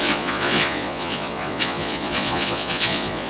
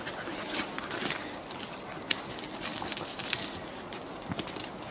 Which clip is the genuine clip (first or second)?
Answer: second